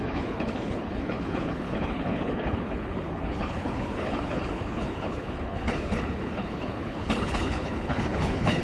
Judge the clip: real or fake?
fake